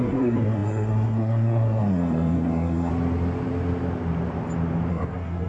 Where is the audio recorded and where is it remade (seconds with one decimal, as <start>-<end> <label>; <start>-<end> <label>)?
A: 0.0-2.9 remade; 2.9-4.9 recorded; 4.9-5.5 remade